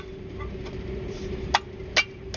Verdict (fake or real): real